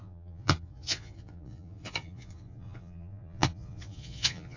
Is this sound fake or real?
fake